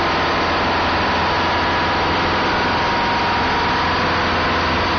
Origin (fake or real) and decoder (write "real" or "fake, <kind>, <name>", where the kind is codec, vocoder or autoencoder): real